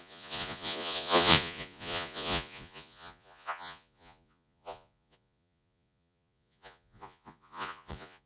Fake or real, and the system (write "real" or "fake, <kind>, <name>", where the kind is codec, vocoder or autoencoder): fake, vocoder, Vocos